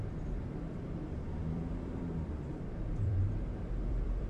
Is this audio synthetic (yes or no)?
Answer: yes